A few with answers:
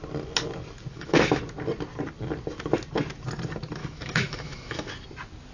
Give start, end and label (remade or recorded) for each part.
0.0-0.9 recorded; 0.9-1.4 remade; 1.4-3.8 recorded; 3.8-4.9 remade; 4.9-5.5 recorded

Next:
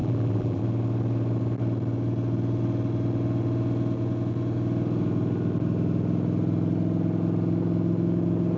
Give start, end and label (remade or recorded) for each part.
0.0-0.6 remade; 0.6-8.6 recorded